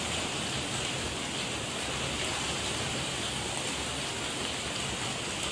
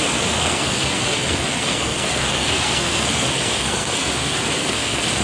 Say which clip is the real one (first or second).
first